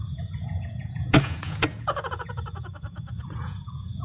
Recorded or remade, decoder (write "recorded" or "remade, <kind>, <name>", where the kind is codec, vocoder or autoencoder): remade, vocoder, Vocos